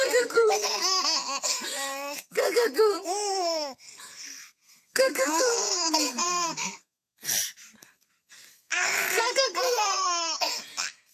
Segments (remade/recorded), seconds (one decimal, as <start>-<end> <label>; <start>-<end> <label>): 0.0-7.3 remade; 7.3-7.8 recorded; 7.8-11.1 remade